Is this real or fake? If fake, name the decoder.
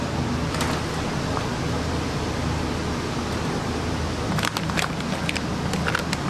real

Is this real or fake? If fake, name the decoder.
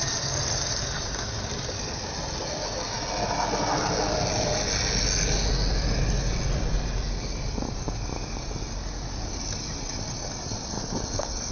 real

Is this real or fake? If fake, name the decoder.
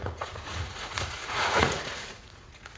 fake, vocoder, Vocos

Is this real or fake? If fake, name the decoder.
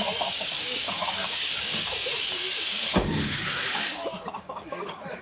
fake, codec, DAC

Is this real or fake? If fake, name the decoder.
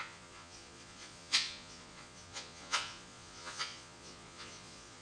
fake, vocoder, Vocos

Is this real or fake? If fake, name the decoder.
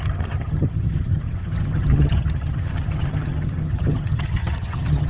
fake, vocoder, HiFi-GAN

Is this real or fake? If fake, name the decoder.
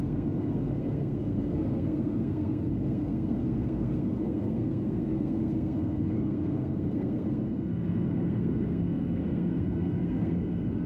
fake, codec, SNAC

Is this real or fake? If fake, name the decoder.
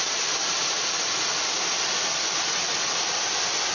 real